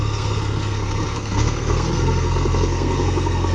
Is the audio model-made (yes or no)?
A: yes